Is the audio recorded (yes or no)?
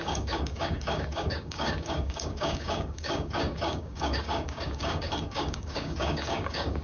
no